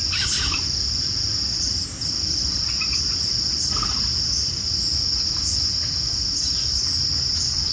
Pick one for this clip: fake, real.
real